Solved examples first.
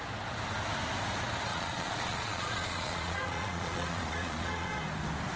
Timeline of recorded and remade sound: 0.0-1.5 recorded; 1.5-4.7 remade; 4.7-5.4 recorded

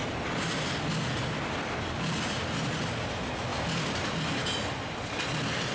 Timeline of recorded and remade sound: 0.0-5.7 recorded

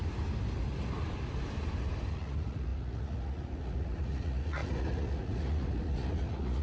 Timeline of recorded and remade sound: 0.0-2.1 recorded; 2.1-6.6 remade